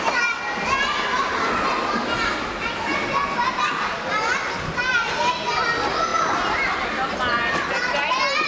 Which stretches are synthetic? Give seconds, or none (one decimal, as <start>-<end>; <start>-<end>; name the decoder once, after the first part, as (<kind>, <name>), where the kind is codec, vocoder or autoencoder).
none